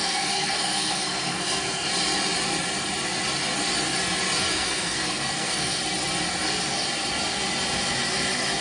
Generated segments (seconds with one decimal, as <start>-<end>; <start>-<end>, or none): 0.0-1.9; 4.5-5.8